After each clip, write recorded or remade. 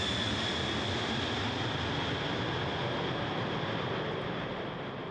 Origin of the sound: recorded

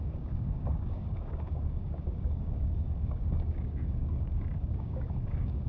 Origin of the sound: remade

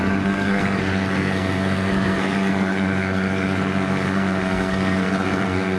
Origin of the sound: remade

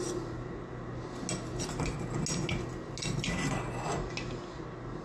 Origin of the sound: recorded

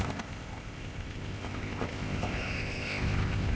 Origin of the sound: remade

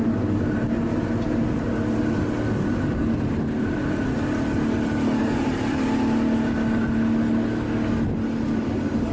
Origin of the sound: recorded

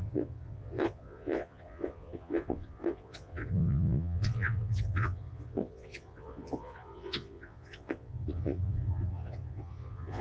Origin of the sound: remade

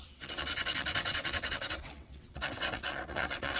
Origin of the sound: remade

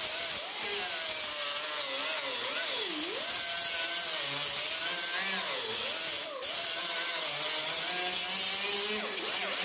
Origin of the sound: recorded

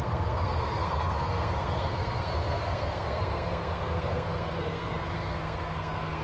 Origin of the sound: remade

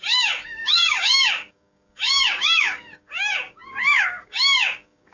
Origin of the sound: remade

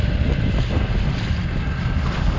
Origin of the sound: recorded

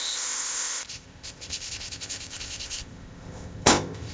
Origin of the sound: remade